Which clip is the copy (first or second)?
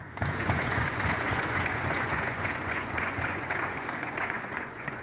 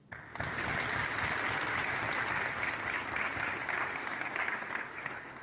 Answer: first